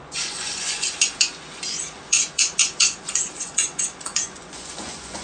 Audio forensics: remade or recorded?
remade